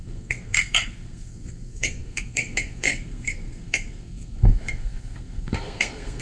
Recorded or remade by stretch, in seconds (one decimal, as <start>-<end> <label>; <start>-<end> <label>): 0.0-6.2 remade